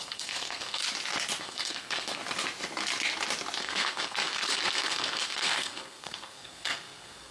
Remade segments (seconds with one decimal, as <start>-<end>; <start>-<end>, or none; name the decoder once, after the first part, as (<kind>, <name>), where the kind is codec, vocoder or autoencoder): 0.0-0.8 (codec, SNAC); 1.4-2.2; 3.6-7.3